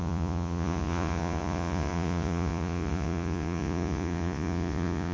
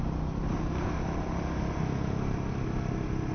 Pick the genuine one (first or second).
second